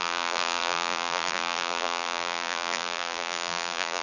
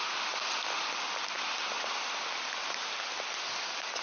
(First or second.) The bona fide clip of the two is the second